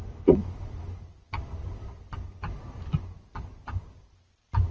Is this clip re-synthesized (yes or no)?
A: no